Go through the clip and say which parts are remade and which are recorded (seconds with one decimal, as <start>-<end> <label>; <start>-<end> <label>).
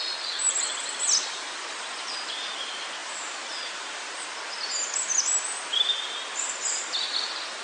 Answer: 0.0-3.0 recorded; 3.0-4.3 remade; 4.3-7.6 recorded